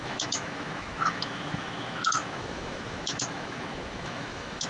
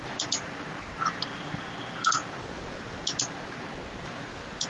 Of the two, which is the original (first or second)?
second